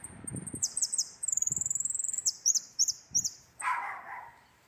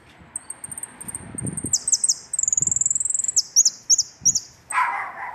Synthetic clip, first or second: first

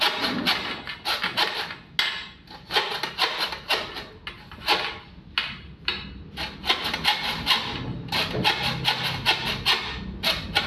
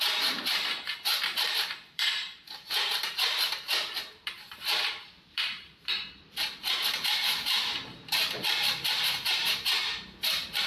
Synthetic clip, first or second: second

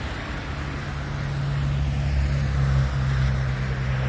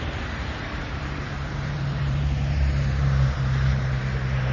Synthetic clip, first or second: second